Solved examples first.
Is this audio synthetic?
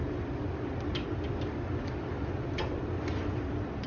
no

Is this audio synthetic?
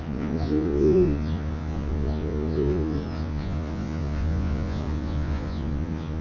yes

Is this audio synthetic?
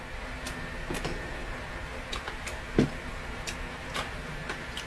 no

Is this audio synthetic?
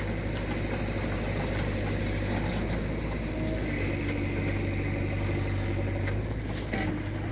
no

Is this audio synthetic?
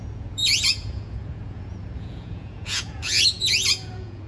yes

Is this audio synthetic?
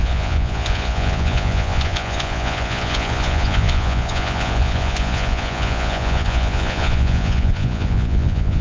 yes